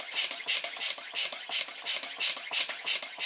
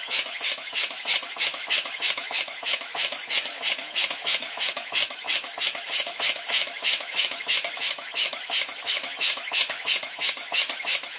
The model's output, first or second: second